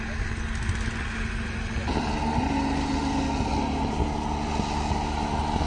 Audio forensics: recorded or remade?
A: recorded